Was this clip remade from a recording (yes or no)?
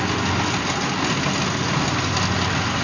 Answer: no